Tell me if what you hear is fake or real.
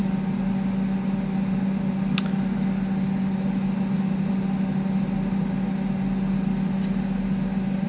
real